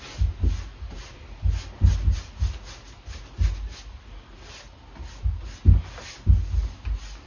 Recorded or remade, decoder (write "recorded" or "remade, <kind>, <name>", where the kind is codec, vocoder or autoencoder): recorded